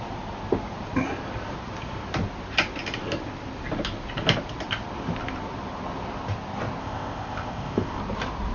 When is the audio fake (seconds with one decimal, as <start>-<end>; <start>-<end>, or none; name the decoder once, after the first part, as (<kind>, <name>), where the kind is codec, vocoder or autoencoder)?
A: 6.8-8.0 (codec, ZipCodec)